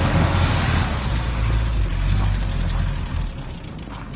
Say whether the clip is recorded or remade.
recorded